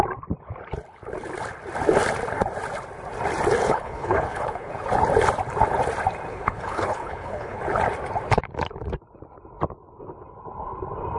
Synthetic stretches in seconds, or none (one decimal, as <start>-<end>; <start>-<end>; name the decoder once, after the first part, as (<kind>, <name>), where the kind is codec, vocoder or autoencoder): 3.6-4.7 (codec, HILCodec); 6.3-7.6